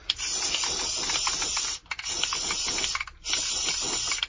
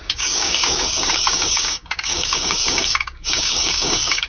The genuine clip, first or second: first